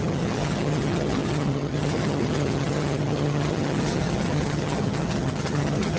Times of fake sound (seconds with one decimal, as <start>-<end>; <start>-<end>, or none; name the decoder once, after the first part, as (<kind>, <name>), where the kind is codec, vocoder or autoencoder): 0.0-6.0 (vocoder, HiFi-GAN)